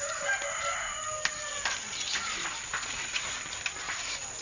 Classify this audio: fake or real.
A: real